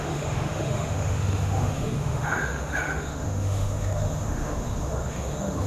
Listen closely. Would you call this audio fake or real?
fake